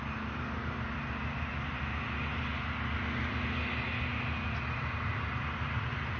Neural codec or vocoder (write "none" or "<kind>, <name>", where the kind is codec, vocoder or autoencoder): none